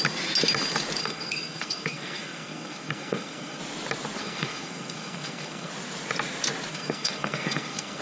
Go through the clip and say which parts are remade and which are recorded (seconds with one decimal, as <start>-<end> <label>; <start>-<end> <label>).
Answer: 0.0-1.0 recorded; 1.0-3.6 remade; 3.6-4.2 recorded; 4.2-5.7 remade; 5.7-6.7 recorded; 6.7-8.0 remade